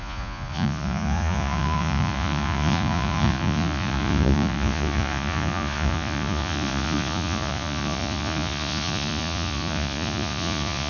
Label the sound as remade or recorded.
remade